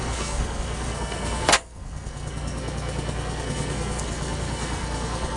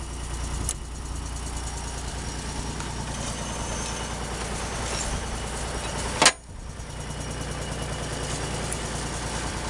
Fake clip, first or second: first